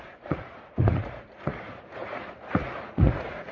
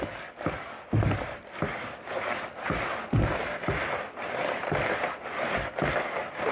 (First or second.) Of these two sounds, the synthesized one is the first